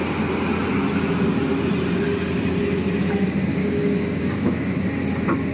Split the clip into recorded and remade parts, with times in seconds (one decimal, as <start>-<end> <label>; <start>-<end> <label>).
0.0-3.5 recorded; 3.5-4.8 remade; 4.8-5.5 recorded